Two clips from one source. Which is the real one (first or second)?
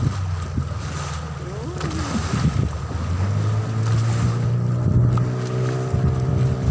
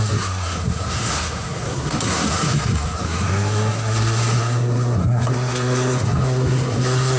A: first